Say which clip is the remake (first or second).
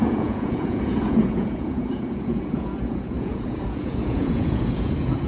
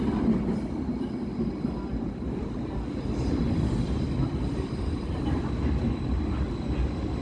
first